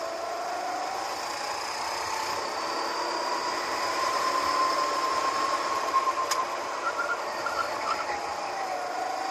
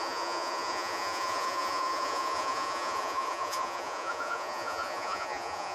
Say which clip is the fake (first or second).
second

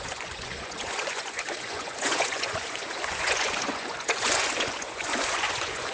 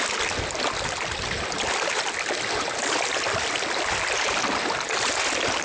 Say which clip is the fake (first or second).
first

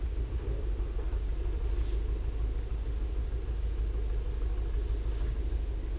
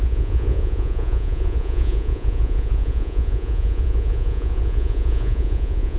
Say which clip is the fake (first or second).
second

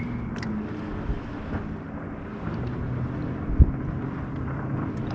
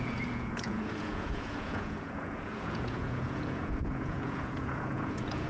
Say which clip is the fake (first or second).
second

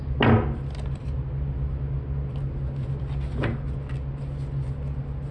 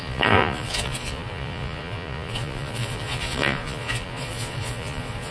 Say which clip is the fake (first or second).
second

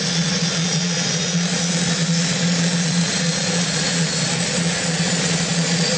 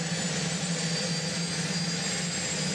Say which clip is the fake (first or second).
first